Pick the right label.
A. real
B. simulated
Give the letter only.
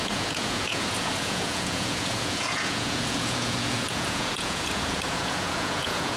B